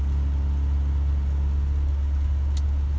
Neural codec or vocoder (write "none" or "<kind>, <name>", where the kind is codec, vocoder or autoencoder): none